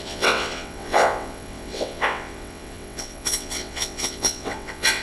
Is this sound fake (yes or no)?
yes